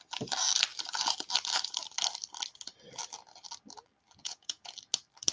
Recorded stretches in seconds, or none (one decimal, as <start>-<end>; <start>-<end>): 0.0-4.2; 4.7-5.3